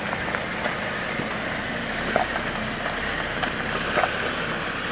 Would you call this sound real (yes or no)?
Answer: yes